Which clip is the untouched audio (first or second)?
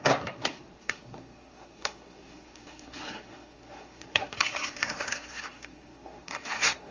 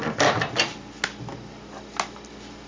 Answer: second